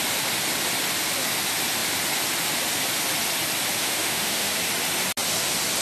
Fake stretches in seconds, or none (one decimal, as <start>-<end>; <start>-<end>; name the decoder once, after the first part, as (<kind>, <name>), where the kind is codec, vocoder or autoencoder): 3.8-4.5 (autoencoder, DAC-VAE)